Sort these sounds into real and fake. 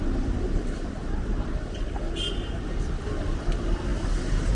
real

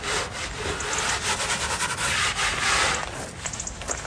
real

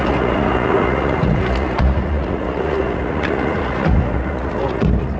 fake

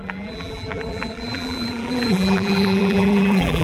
fake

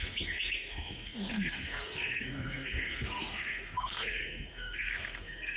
fake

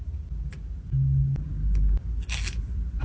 real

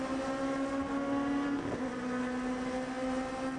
real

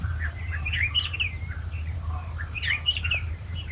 fake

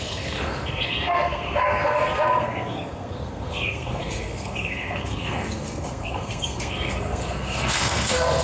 fake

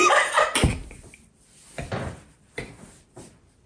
fake